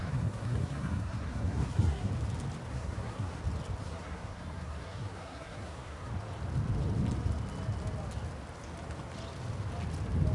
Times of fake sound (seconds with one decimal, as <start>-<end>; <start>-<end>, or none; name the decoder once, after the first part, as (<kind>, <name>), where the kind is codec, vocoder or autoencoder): 0.0-2.1 (codec, SNAC); 2.7-3.4; 3.8-6.1